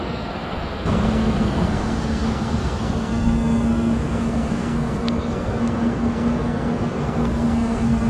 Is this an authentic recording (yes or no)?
no